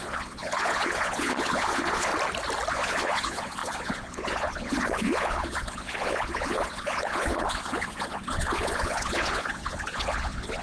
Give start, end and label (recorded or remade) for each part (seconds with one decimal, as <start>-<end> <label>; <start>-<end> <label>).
0.0-2.1 remade; 2.1-2.7 recorded; 2.7-10.6 remade